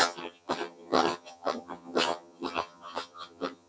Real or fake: fake